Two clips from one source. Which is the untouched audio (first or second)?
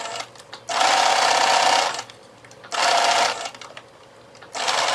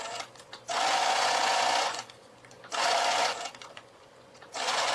first